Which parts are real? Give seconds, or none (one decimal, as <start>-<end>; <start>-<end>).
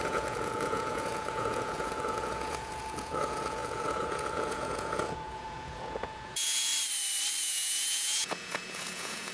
6.7-7.4